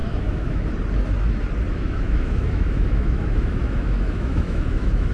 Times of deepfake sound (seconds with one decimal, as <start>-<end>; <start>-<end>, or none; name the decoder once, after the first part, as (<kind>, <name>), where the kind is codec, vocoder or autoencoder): 0.0-0.7 (autoencoder, DAC-VAE); 1.7-5.1

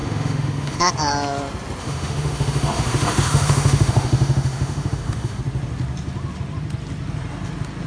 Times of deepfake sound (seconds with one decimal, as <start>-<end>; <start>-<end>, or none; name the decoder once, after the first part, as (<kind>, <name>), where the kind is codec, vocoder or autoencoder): 0.0-0.9 (autoencoder, DAC-VAE); 1.8-5.4

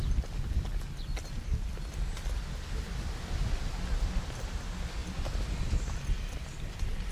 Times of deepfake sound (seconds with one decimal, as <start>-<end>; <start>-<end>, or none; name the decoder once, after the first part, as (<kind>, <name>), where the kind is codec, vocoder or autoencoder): none

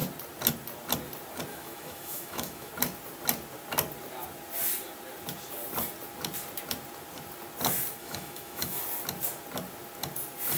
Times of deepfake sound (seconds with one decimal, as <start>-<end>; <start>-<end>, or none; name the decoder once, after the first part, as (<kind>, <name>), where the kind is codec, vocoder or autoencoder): 1.5-2.7 (autoencoder, DAC-VAE); 8.0-8.8

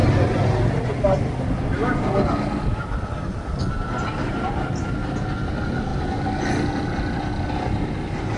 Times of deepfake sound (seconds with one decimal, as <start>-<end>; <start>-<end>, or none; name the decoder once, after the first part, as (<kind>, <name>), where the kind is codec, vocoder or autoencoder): none

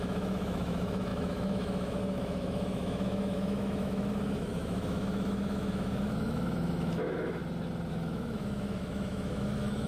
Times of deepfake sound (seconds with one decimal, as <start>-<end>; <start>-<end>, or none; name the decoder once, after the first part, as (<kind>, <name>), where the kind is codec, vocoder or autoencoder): 0.0-7.4 (autoencoder, DAC-VAE); 7.9-9.9

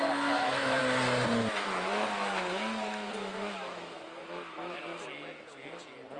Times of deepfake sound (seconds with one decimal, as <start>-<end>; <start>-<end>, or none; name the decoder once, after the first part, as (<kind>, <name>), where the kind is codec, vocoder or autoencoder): 0.0-0.8 (autoencoder, DAC-VAE); 1.5-4.9